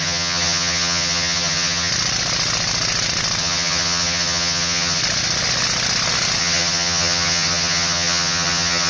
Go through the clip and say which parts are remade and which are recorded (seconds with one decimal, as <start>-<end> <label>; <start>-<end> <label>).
0.0-1.9 remade; 1.9-3.4 recorded; 3.4-5.0 remade; 5.0-6.4 recorded; 6.4-8.9 remade